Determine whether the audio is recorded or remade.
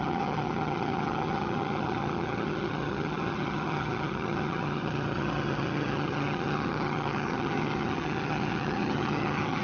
remade